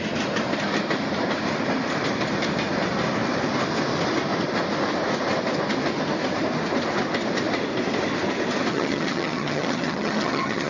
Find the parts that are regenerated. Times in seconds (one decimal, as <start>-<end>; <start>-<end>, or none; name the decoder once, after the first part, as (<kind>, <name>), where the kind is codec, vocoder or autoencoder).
8.7-10.7 (vocoder, HiFi-GAN)